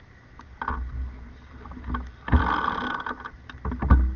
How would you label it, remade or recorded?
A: recorded